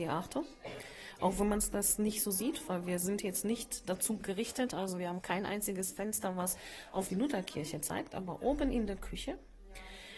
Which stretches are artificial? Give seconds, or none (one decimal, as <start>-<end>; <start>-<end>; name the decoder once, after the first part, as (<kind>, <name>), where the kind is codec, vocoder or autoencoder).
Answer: 4.2-7.1 (autoencoder, DAC-VAE)

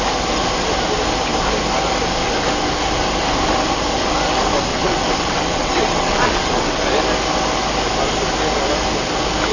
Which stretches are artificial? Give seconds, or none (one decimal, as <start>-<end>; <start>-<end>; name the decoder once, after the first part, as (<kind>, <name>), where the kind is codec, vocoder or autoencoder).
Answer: 4.7-6.9 (vocoder, WaveNeXt)

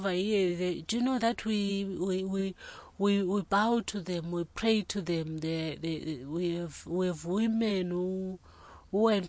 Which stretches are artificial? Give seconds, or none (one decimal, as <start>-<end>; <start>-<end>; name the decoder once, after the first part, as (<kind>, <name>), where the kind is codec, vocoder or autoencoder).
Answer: 7.7-8.5 (autoencoder, DAC-VAE)

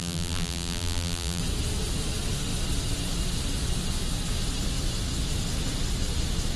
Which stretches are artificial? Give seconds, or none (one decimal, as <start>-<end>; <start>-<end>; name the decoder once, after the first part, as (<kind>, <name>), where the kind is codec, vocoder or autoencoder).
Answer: 0.0-1.4 (vocoder, BigVGAN v2)

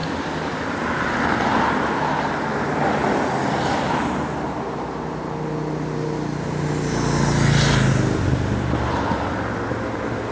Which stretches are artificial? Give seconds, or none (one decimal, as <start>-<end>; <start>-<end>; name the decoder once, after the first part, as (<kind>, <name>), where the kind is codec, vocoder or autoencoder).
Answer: none

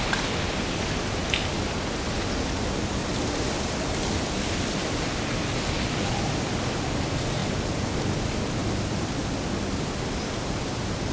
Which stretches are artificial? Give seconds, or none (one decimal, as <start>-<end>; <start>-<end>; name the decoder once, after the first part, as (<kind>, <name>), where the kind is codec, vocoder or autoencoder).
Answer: 3.0-6.3 (vocoder, BigVGAN v2); 8.6-9.4

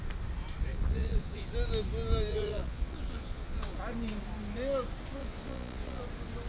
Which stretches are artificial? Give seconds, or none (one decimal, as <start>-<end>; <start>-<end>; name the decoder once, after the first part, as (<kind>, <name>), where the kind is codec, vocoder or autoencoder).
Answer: 0.7-1.5 (vocoder, Vocos); 2.3-3.8; 5.2-6.0

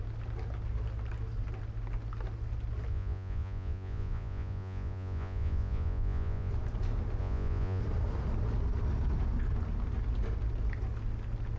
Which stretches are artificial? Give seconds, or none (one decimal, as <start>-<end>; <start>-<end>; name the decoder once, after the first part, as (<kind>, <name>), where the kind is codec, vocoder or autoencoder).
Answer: 2.9-6.5 (vocoder, Vocos); 7.2-7.8